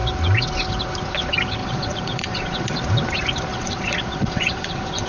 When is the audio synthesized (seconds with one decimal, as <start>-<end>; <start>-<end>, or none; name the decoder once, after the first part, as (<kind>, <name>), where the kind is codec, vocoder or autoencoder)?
1.6-2.7 (vocoder, Vocos); 3.5-5.1